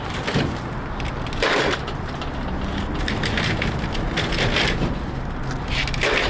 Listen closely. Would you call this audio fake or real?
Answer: real